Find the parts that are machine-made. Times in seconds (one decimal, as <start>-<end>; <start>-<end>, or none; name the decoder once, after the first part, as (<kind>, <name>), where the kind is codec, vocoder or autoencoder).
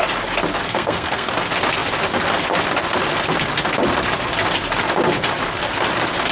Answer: 0.6-1.3 (codec, SNAC)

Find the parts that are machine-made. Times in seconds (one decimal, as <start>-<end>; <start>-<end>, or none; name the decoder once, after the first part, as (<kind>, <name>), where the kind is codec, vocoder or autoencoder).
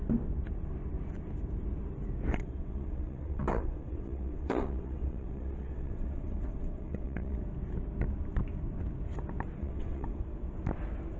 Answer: 2.3-7.4 (vocoder, WaveNeXt); 9.6-10.2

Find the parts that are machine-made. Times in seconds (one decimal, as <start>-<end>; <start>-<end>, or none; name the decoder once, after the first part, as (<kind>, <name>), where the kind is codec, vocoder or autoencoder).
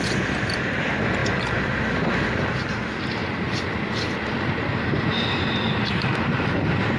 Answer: 0.0-7.0 (vocoder, BigVGAN v2)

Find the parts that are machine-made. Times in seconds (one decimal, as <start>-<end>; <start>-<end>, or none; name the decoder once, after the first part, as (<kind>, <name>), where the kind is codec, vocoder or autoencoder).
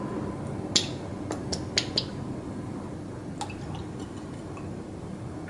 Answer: none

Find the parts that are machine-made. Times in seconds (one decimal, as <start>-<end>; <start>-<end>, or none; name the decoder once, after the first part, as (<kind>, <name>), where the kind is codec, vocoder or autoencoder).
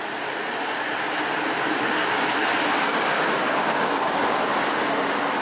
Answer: 2.9-4.4 (codec, DAC)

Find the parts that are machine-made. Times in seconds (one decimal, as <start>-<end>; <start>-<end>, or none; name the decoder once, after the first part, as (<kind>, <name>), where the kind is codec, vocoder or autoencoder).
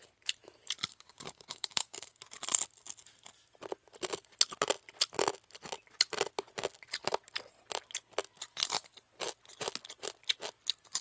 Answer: 0.9-2.2 (codec, DAC)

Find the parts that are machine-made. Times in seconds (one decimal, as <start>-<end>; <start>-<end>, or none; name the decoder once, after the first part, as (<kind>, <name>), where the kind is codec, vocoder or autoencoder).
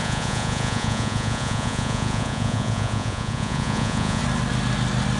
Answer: 0.0-4.2 (vocoder, Vocos)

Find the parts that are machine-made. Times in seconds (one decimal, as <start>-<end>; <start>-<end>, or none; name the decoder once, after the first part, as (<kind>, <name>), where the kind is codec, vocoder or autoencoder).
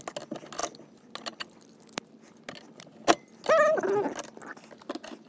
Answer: none